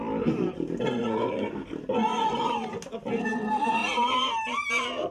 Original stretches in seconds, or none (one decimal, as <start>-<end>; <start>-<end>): 0.0-5.1